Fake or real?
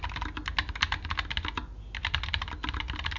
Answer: real